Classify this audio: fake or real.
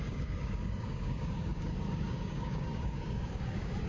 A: fake